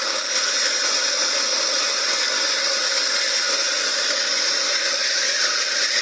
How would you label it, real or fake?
real